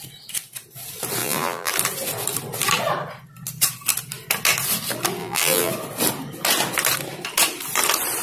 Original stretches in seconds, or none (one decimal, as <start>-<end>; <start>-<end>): 0.0-1.2; 1.7-5.2; 5.7-8.2